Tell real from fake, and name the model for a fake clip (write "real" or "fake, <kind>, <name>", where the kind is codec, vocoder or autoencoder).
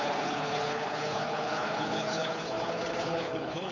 fake, codec, HILCodec